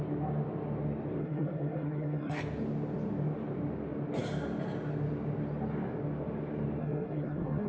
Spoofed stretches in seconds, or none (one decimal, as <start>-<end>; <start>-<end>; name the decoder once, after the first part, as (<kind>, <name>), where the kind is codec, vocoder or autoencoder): 1.2-2.4 (codec, SNAC); 6.8-7.7

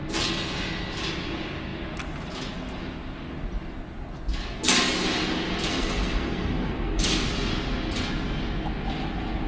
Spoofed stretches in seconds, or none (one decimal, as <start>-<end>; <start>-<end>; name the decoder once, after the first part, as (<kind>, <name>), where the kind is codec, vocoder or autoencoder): 5.7-7.3 (codec, SNAC)

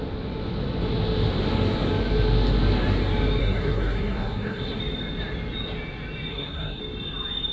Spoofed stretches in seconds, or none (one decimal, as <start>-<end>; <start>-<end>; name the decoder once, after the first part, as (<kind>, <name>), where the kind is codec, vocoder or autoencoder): 3.4-4.8 (codec, SNAC); 6.3-6.8

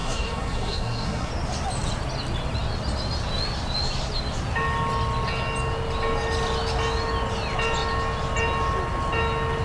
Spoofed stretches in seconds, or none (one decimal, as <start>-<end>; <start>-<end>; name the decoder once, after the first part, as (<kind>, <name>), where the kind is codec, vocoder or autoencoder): 0.0-1.3 (codec, SNAC)

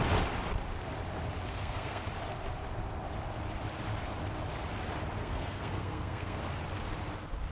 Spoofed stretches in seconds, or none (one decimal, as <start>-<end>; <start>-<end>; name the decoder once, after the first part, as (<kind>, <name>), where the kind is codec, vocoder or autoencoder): 1.5-2.0 (codec, SNAC); 5.2-6.4

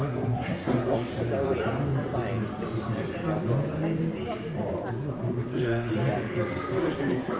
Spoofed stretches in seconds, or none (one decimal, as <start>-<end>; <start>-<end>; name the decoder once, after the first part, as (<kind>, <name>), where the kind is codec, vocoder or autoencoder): 0.0-1.1 (codec, SNAC); 4.9-5.9; 6.8-7.4

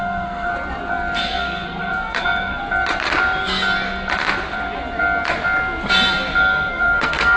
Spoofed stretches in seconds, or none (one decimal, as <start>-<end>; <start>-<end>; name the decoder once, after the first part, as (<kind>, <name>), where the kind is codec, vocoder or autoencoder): 0.0-0.5 (codec, SNAC); 1.2-2.6; 6.7-7.4

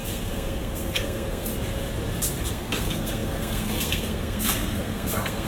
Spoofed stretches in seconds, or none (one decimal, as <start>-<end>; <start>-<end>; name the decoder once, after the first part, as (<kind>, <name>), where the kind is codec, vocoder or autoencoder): 0.0-1.5 (codec, SNAC); 2.5-5.5